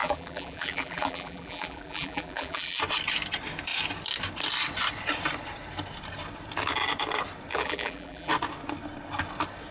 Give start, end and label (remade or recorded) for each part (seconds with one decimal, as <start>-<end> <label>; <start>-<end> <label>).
0.0-2.8 remade; 2.8-7.5 recorded; 7.5-8.3 remade; 8.3-9.7 recorded